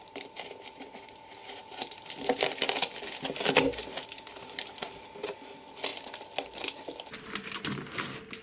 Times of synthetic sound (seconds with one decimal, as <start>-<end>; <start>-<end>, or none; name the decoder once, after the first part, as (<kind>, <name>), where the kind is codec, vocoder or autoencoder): none